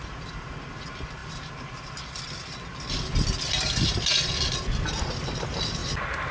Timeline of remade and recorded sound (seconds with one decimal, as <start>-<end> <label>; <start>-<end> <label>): 0.0-6.3 recorded